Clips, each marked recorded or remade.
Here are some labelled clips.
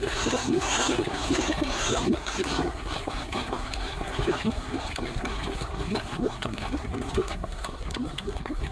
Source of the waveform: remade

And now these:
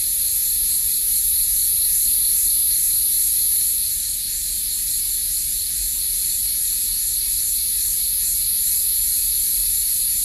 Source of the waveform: recorded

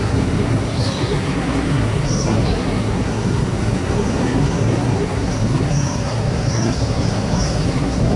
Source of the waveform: remade